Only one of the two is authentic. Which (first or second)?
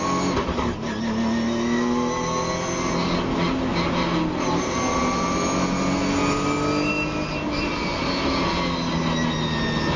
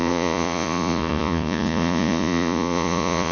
first